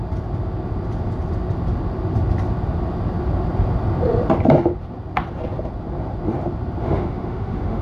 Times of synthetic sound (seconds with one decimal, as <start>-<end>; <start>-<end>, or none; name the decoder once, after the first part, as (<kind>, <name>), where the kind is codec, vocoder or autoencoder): 6.8-7.8 (autoencoder, DAC-VAE)